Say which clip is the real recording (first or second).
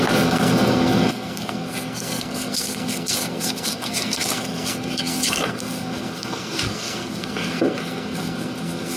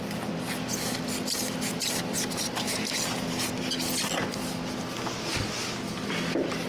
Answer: second